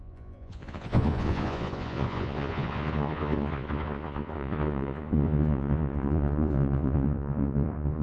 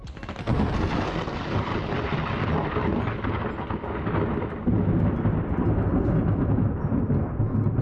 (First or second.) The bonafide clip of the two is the second